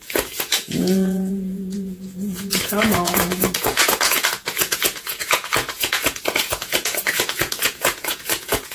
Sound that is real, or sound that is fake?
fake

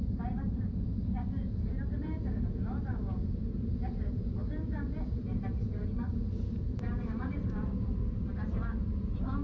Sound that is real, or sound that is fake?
fake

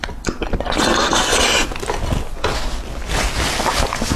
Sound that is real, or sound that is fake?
real